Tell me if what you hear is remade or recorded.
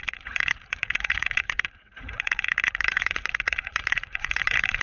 remade